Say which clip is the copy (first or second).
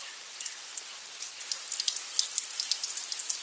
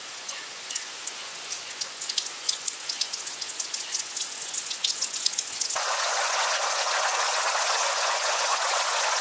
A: second